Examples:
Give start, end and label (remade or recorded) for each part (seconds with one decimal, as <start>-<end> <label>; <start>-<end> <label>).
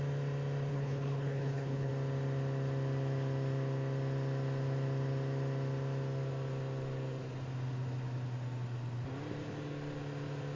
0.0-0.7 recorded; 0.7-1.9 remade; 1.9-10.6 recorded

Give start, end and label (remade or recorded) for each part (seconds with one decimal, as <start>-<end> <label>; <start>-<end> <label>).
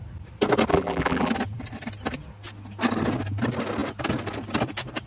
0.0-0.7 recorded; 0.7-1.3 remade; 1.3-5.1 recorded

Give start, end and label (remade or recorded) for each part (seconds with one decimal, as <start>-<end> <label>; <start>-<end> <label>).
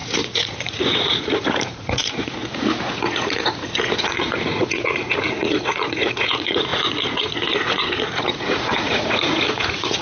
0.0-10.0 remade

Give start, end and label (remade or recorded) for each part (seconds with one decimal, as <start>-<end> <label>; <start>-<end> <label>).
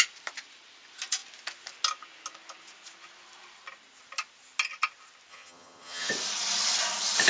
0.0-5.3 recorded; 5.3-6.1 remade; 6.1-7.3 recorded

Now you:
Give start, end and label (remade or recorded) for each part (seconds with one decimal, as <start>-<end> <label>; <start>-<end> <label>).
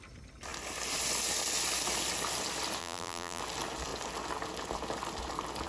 0.0-2.8 recorded; 2.8-3.4 remade; 3.4-5.7 recorded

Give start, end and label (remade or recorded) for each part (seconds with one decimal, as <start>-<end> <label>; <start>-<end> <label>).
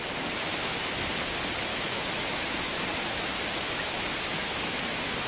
0.0-1.7 recorded; 1.7-5.3 remade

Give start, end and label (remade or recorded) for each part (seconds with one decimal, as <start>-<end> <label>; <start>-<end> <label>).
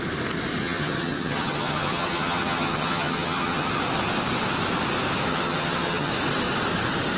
0.0-0.6 recorded; 0.6-3.8 remade; 3.8-5.3 recorded; 5.3-6.1 remade; 6.1-7.2 recorded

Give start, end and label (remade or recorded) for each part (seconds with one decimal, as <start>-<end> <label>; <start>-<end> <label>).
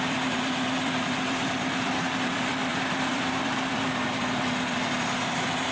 0.0-5.7 remade